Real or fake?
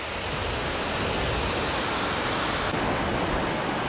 real